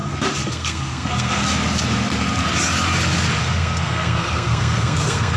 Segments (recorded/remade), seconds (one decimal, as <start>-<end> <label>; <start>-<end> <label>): 0.0-0.5 recorded; 0.5-1.4 remade; 1.4-3.4 recorded; 3.4-5.4 remade